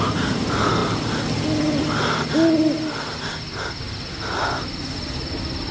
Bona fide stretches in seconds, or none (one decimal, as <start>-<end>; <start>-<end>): 0.0-5.7